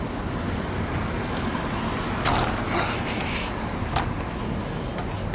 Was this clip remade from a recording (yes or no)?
no